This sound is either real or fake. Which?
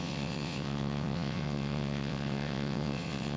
fake